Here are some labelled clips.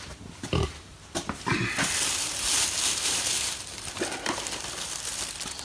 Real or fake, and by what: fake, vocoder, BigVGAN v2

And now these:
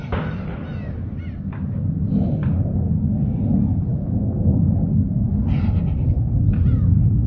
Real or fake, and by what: real